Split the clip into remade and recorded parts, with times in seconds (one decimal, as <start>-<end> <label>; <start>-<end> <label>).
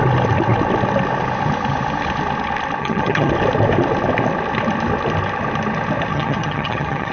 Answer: 0.0-2.8 recorded; 2.8-3.3 remade; 3.3-6.1 recorded; 6.1-7.1 remade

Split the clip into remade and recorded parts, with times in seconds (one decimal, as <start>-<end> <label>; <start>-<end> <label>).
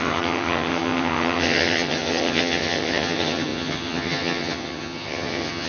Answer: 0.0-5.7 remade